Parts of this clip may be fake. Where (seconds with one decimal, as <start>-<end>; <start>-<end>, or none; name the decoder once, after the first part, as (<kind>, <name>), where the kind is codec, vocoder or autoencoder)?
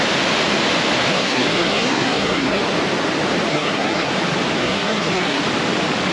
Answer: 1.1-2.6 (codec, SNAC); 3.5-4.1; 4.6-5.4